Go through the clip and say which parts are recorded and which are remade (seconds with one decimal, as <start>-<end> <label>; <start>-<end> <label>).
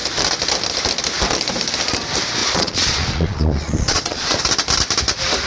0.0-2.4 recorded; 2.4-4.4 remade; 4.4-5.5 recorded